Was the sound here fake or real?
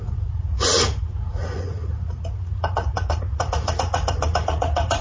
fake